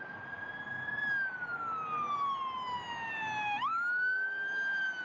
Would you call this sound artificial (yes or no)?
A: no